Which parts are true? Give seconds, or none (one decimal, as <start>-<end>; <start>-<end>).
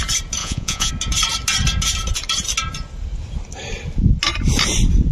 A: 0.0-0.4; 0.9-5.1